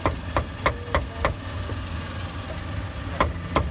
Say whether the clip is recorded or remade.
recorded